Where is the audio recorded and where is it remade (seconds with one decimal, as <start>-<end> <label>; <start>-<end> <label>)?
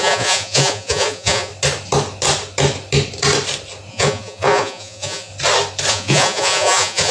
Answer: 0.0-1.5 remade; 1.5-3.9 recorded; 3.9-5.3 remade; 5.3-5.9 recorded; 5.9-7.1 remade